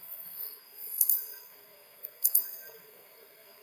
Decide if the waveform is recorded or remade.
remade